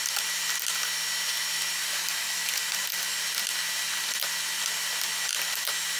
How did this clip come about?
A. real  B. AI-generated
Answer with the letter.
A